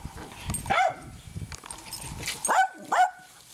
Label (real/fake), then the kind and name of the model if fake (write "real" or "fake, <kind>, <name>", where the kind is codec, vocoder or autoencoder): real